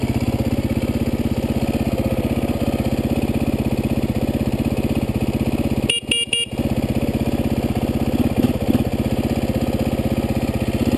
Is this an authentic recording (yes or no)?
yes